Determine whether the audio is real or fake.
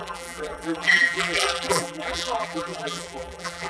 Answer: fake